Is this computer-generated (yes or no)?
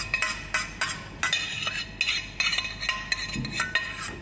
no